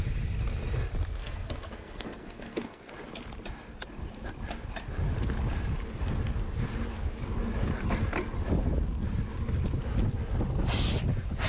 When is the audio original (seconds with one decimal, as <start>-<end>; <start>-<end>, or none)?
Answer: 0.0-1.2; 2.9-11.5